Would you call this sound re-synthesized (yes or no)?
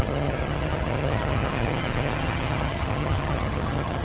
yes